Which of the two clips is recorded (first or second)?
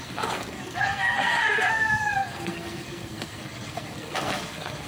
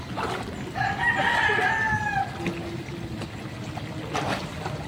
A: second